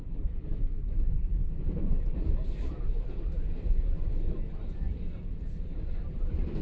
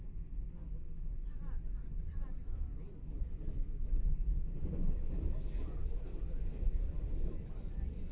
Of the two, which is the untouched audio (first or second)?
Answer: second